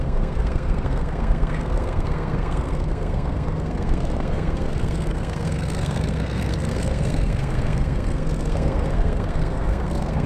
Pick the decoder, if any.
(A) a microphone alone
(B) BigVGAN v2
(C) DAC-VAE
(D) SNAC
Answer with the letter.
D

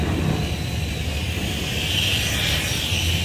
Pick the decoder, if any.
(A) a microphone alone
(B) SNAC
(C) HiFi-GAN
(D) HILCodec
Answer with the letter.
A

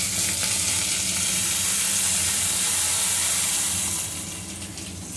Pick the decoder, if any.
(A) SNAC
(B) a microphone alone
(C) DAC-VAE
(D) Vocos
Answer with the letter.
B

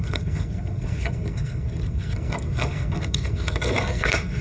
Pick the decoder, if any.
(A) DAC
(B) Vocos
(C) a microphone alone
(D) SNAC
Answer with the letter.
D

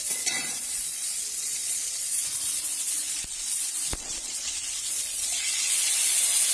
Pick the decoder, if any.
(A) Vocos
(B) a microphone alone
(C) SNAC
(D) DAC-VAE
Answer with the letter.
A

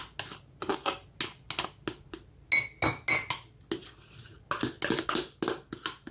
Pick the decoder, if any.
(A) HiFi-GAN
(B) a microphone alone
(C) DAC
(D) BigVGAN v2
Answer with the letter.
B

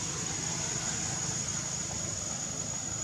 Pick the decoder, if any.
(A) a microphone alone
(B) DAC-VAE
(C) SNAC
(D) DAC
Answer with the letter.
A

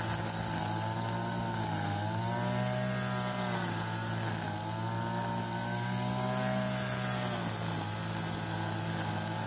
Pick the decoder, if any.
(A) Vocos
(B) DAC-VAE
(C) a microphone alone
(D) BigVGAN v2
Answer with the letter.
C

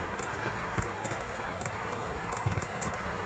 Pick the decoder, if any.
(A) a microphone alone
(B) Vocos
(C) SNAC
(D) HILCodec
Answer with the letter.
C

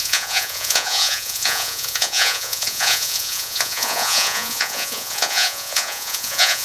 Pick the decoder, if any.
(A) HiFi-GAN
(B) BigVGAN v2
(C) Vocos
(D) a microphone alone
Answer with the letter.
C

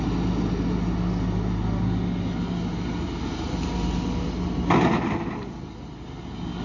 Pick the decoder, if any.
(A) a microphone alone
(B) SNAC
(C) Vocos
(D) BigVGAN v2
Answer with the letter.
A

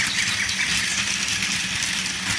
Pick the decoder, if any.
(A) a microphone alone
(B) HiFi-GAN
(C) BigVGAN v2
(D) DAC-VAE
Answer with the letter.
A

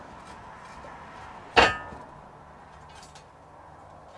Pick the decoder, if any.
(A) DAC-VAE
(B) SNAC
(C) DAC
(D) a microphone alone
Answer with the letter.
D